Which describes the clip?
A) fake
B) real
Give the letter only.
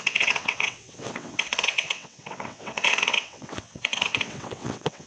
A